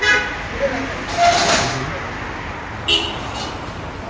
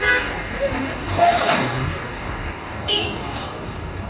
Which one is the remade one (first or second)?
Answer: second